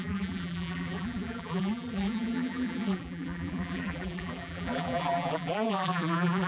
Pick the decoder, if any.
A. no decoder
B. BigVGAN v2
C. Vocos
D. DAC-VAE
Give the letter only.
B